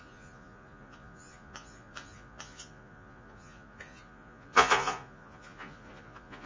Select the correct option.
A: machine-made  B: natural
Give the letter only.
A